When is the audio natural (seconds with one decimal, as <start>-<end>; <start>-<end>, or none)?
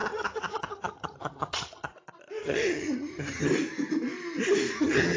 1.9-2.4; 3.5-4.8